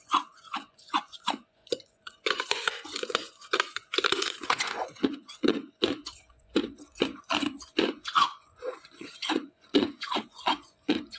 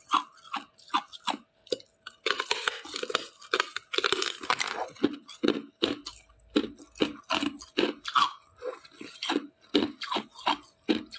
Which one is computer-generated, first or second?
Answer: first